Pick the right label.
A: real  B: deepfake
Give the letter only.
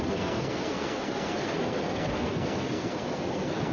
B